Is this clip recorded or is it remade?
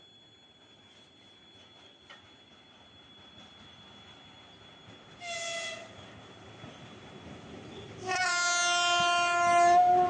recorded